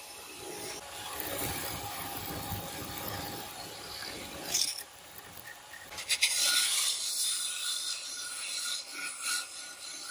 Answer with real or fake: fake